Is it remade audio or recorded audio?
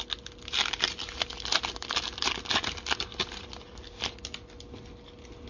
recorded